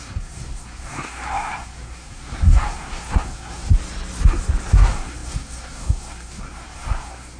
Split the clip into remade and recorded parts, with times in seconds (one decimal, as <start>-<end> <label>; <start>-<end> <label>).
0.0-3.7 remade; 3.7-4.7 recorded; 4.7-7.4 remade